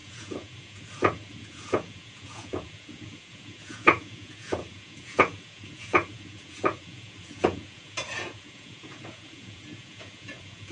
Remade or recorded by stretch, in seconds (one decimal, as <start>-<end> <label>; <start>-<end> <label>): 0.0-10.7 remade